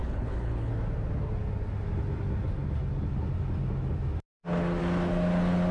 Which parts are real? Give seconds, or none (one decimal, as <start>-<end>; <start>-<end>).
0.7-5.7